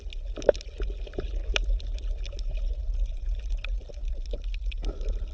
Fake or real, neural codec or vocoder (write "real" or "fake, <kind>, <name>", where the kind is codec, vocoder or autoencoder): real